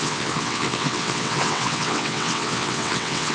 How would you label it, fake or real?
fake